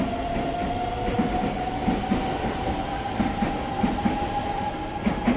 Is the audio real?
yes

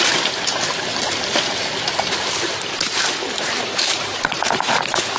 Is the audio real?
yes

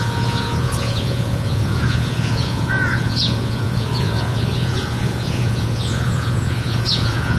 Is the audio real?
no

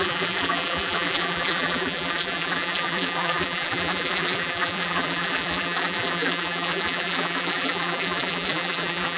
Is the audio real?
no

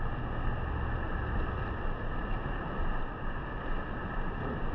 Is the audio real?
yes